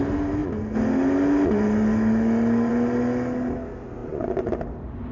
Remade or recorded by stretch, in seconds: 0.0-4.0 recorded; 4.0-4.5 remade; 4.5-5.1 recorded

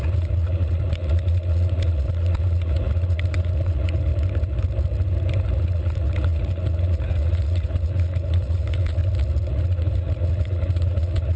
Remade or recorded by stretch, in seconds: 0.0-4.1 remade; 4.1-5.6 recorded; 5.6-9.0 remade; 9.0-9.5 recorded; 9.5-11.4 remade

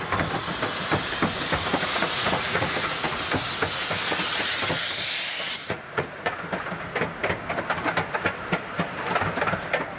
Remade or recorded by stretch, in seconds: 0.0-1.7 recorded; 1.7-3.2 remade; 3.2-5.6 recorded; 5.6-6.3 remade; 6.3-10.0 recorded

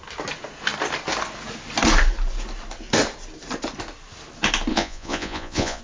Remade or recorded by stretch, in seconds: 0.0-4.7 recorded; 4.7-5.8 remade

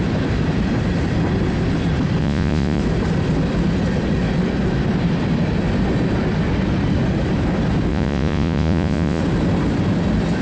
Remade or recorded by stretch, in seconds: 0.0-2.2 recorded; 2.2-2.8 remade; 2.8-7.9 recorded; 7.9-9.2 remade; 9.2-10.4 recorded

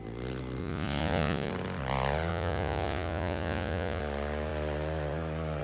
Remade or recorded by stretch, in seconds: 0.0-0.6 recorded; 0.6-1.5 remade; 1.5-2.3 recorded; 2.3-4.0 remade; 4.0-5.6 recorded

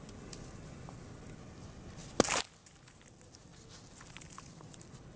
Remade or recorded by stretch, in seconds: 0.0-5.2 recorded

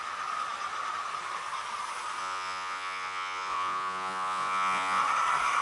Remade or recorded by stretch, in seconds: 0.0-2.2 recorded; 2.2-5.0 remade; 5.0-5.6 recorded